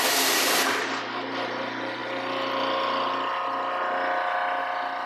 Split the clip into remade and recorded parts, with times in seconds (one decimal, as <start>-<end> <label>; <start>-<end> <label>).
0.0-5.1 recorded